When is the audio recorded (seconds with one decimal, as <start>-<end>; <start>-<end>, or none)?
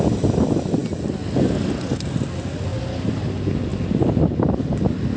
0.0-5.2